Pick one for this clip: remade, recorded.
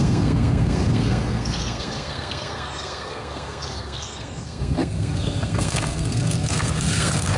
remade